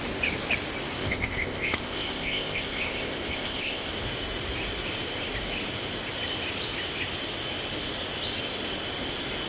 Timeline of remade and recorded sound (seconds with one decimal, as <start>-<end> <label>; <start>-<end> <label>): 0.0-1.0 recorded; 1.0-3.9 remade; 3.9-9.5 recorded

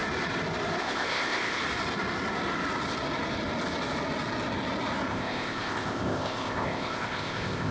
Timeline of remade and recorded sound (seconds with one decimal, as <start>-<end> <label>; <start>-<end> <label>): 0.0-0.8 recorded; 0.8-1.6 remade; 1.6-5.1 recorded; 5.1-7.7 remade

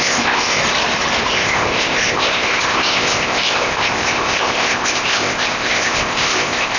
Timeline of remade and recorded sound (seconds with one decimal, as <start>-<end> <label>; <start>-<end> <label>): 0.0-0.6 remade; 0.6-1.3 recorded; 1.3-6.8 remade

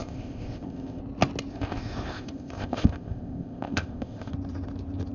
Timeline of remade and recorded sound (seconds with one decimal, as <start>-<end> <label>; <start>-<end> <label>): 0.0-1.0 remade; 1.0-1.5 recorded; 1.5-4.3 remade; 4.3-5.1 recorded